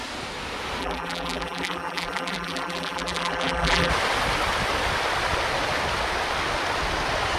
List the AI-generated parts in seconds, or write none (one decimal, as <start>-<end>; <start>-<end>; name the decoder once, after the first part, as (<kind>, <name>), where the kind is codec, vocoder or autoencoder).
0.8-3.9 (vocoder, BigVGAN v2)